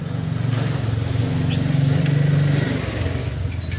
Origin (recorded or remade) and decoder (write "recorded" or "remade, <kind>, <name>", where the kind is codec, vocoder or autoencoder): recorded